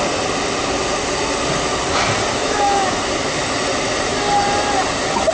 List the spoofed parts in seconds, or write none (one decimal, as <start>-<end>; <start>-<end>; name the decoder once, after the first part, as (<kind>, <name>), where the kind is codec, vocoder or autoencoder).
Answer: 2.4-3.0 (autoencoder, DAC-VAE)